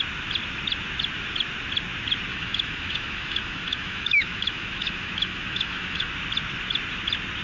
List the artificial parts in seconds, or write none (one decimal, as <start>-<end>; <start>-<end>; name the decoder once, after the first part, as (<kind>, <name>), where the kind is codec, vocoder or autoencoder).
2.3-6.1 (autoencoder, DAC-VAE)